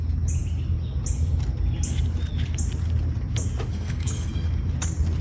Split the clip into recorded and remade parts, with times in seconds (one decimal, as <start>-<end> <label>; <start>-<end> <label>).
0.0-3.7 recorded; 3.7-4.3 remade; 4.3-5.2 recorded